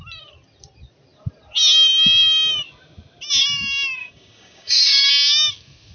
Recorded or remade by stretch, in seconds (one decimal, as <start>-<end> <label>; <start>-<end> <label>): 0.0-4.0 recorded; 4.0-5.1 remade; 5.1-5.9 recorded